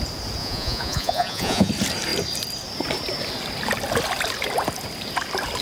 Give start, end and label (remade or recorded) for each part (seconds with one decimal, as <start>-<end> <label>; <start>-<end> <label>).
0.0-0.4 recorded; 0.4-1.7 remade; 1.7-5.6 recorded